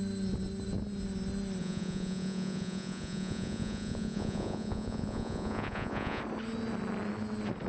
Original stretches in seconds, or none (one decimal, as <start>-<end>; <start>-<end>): 0.0-1.6; 6.2-7.7